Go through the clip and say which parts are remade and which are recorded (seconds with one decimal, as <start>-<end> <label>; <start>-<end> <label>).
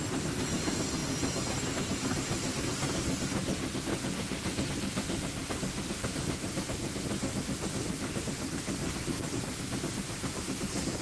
0.0-3.9 recorded; 3.9-4.7 remade; 4.7-8.8 recorded; 8.8-9.6 remade; 9.6-11.0 recorded